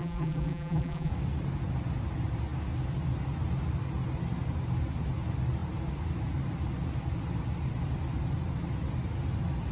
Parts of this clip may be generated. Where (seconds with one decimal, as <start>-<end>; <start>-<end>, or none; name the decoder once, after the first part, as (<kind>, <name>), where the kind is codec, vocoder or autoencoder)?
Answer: 0.0-1.1 (vocoder, BigVGAN v2)